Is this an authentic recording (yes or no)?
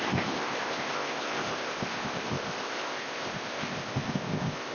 no